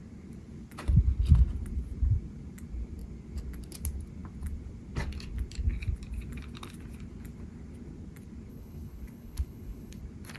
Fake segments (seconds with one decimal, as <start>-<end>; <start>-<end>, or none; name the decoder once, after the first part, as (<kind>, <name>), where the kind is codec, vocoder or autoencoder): 8.5-10.0 (codec, HILCodec)